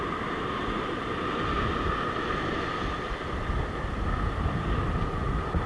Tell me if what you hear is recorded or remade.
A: recorded